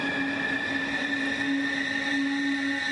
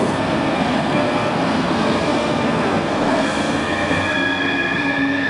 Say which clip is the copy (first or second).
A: second